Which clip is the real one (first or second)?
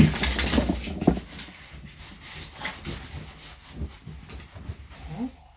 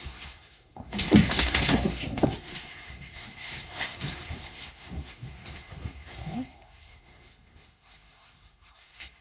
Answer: first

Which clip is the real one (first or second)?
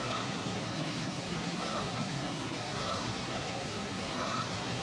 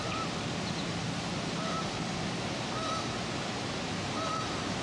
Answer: second